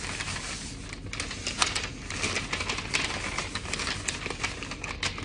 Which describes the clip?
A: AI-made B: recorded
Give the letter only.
B